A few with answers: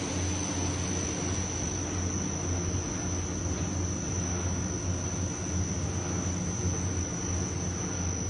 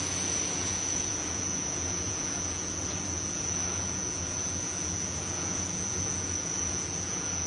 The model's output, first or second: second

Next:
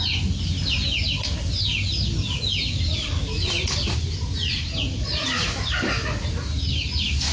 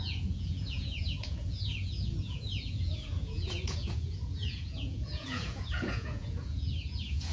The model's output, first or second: second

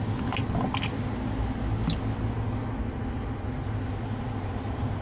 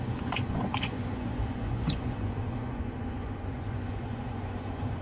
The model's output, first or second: second